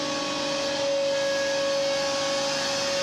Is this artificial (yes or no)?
no